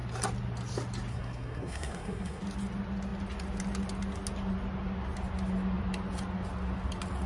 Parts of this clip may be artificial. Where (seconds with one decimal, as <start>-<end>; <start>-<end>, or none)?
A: 1.1-2.4